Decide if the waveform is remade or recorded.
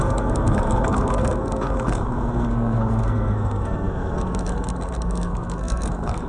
remade